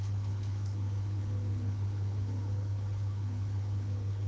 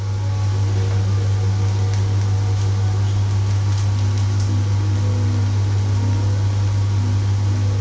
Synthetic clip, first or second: first